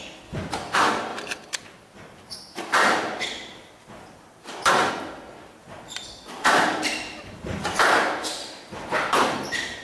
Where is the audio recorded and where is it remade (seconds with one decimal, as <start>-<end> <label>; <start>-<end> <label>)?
0.0-9.8 remade